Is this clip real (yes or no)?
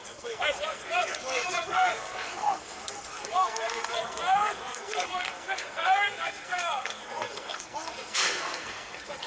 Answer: no